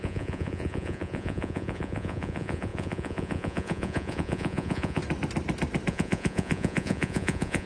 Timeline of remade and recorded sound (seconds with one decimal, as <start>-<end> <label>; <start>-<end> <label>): 0.0-5.0 remade; 5.0-5.9 recorded; 5.9-7.7 remade

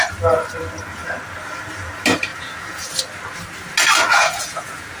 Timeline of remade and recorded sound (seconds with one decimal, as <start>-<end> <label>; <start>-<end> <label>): 0.0-2.3 recorded; 2.3-2.9 remade; 2.9-4.2 recorded; 4.2-5.0 remade

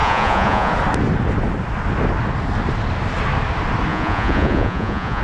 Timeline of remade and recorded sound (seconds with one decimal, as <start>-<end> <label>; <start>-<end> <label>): 0.0-0.7 remade; 0.7-3.9 recorded; 3.9-5.2 remade